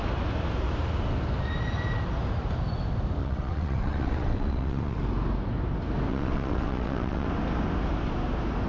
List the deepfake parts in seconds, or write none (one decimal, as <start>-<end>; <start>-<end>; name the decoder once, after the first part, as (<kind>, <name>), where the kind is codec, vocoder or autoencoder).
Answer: 3.2-5.0 (vocoder, WaveNeXt); 6.1-7.3